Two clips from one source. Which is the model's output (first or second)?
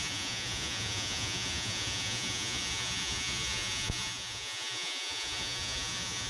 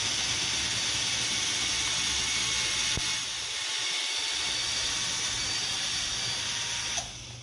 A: first